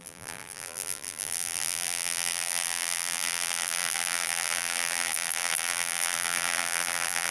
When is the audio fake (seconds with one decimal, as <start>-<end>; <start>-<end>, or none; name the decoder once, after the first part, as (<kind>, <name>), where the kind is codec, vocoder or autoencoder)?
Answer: 0.0-7.3 (vocoder, BigVGAN v2)